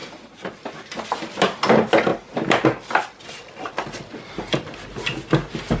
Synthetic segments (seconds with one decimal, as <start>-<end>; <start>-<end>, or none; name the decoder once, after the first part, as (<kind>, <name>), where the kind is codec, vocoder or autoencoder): none